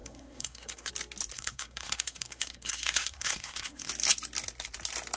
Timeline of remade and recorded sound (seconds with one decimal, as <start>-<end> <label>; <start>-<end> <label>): 0.0-0.9 remade; 0.9-1.3 recorded; 1.3-3.9 remade; 3.9-5.2 recorded